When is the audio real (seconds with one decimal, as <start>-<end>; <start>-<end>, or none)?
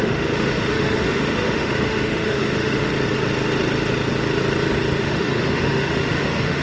2.9-5.0